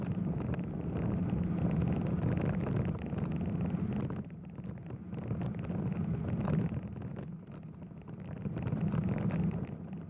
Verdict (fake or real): real